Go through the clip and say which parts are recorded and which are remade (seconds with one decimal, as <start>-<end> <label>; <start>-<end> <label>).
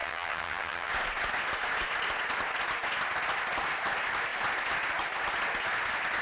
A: 0.0-0.9 remade; 0.9-6.2 recorded